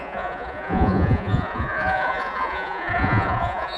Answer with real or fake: fake